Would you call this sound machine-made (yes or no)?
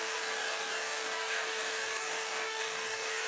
yes